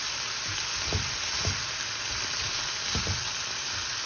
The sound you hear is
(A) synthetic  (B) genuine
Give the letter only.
B